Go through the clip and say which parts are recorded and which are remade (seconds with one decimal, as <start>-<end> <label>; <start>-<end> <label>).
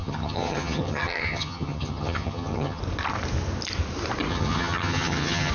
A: 0.0-2.8 remade; 2.8-4.3 recorded; 4.3-5.5 remade